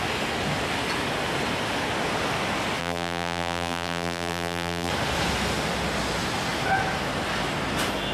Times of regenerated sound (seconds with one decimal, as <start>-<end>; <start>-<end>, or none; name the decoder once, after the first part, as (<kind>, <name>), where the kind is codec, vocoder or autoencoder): 2.8-4.9 (vocoder, BigVGAN v2)